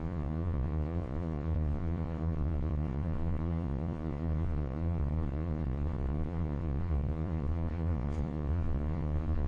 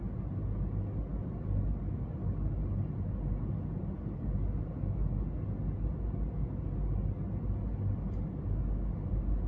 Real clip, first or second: second